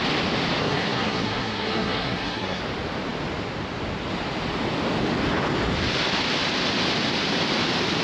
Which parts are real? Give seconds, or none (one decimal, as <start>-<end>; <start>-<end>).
0.0-0.6; 2.6-8.0